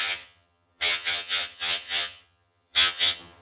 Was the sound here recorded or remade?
remade